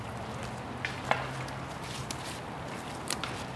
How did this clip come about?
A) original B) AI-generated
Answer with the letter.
A